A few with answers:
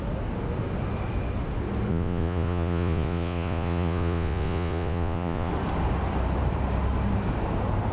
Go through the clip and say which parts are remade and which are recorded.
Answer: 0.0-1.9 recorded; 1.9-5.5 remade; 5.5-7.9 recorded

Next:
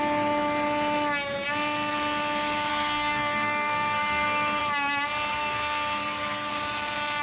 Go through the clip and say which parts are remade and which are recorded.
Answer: 0.0-2.7 recorded; 2.7-4.6 remade; 4.6-5.3 recorded; 5.3-6.5 remade; 6.5-7.2 recorded

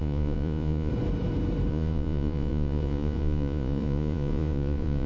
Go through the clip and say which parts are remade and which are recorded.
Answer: 0.0-0.9 remade; 0.9-1.7 recorded; 1.7-5.1 remade

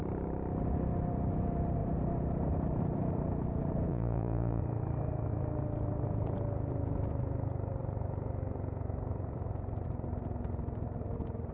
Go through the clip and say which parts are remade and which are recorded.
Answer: 0.0-3.9 recorded; 3.9-4.6 remade; 4.6-11.5 recorded

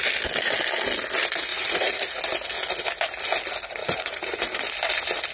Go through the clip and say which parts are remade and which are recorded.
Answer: 0.0-1.5 recorded; 1.5-2.2 remade; 2.2-3.8 recorded; 3.8-4.6 remade; 4.6-5.3 recorded

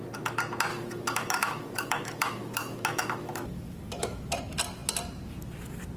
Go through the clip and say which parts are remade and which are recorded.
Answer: 0.0-0.7 recorded; 0.7-4.3 remade; 4.3-6.0 recorded